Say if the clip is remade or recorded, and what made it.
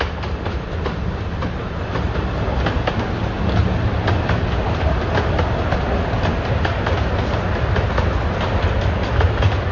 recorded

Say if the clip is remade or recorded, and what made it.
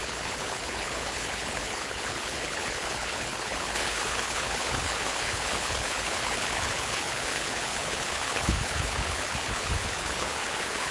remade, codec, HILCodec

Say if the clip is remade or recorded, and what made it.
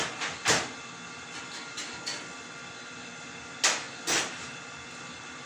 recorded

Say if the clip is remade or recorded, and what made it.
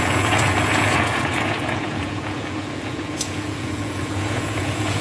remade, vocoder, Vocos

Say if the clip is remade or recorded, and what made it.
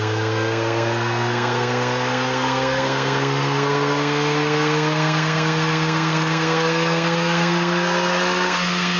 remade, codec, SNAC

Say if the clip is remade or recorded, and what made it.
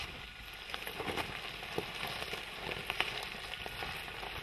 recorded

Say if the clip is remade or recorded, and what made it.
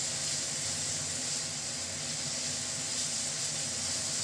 recorded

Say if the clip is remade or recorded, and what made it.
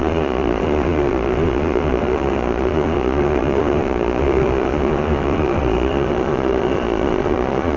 remade, vocoder, Vocos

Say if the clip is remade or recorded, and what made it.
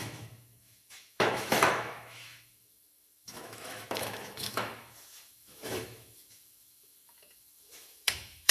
remade, autoencoder, DAC-VAE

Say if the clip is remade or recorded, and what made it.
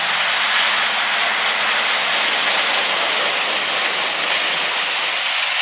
recorded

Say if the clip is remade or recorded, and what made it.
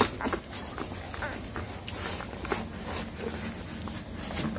recorded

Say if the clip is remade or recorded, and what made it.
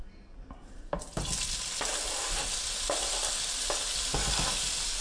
recorded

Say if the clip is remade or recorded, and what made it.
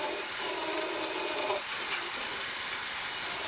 recorded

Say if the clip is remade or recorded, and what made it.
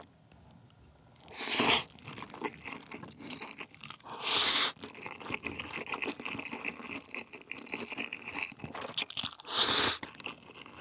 recorded